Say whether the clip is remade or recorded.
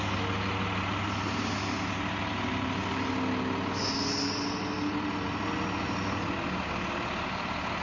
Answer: recorded